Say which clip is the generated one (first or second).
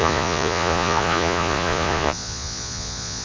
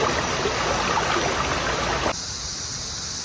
first